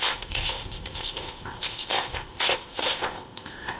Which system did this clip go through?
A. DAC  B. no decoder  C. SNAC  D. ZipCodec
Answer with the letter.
D